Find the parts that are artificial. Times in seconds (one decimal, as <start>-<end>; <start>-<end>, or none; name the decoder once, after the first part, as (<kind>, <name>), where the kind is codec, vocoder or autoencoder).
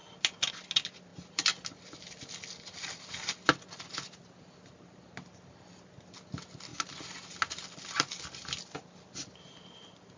none